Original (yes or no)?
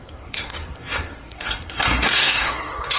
no